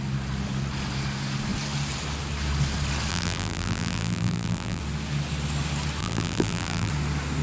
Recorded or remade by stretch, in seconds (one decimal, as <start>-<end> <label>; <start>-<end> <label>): 0.0-3.1 recorded; 3.1-4.8 remade; 4.8-6.0 recorded; 6.0-6.9 remade; 6.9-7.4 recorded